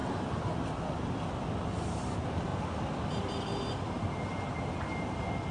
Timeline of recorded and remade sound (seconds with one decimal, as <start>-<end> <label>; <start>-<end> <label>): 0.0-5.5 recorded